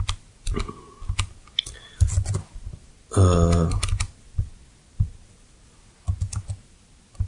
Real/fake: real